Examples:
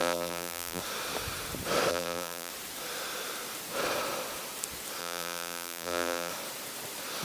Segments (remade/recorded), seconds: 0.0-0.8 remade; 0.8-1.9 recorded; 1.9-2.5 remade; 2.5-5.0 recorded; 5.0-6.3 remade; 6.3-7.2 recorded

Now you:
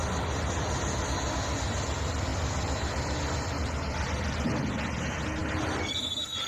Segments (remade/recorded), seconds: 0.0-6.5 recorded

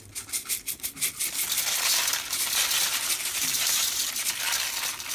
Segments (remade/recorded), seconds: 0.0-2.9 recorded; 2.9-4.0 remade; 4.0-5.1 recorded

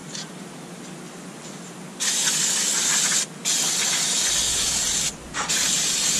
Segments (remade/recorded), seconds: 0.0-6.2 recorded

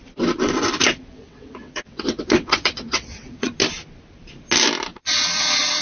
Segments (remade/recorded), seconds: 0.0-1.1 recorded; 1.1-3.5 remade; 3.5-4.9 recorded; 4.9-5.8 remade